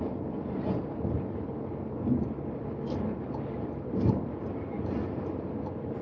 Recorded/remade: recorded